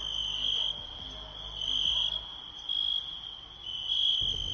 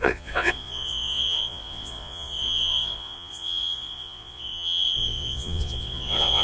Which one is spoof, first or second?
second